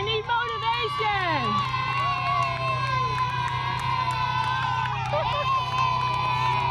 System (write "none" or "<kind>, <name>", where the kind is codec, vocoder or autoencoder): none